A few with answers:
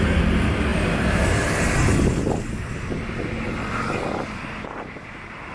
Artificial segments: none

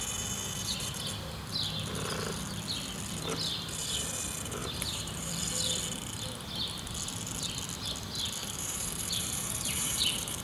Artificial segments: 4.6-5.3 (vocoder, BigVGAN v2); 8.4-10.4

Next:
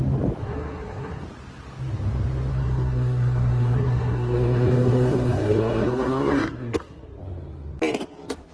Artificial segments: 0.4-1.2 (codec, SNAC); 2.5-7.2

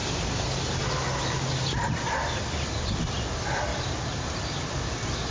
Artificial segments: 3.7-4.3 (vocoder, BigVGAN v2)